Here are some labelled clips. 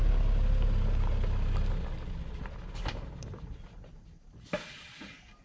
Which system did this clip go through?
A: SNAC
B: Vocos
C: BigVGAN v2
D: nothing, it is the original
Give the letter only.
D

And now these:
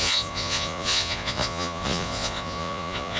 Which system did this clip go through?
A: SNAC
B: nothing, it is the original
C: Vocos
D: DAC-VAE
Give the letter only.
C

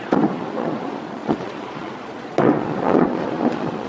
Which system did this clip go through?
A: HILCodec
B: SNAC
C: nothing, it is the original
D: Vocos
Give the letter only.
D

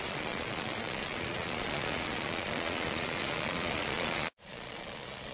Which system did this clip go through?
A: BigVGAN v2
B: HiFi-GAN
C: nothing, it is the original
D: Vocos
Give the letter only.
D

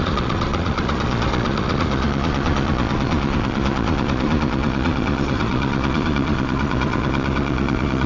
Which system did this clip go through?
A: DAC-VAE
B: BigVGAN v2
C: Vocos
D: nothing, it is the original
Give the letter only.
C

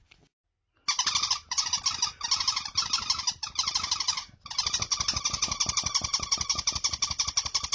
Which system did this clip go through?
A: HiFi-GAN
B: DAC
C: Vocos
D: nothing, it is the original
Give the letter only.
D